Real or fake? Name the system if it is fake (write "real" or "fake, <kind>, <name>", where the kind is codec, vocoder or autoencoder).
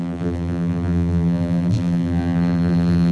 fake, vocoder, BigVGAN v2